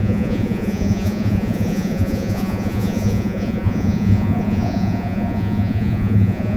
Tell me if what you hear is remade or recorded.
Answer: remade